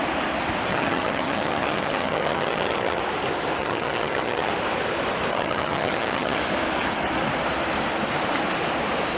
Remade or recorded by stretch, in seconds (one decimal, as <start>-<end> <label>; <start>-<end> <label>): 0.0-0.7 recorded; 0.7-3.0 remade; 3.0-3.6 recorded; 3.6-4.5 remade; 4.5-5.3 recorded; 5.3-6.4 remade; 6.4-9.2 recorded